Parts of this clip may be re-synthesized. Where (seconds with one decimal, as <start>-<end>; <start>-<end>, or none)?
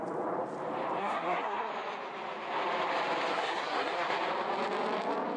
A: 1.0-1.7; 3.3-4.2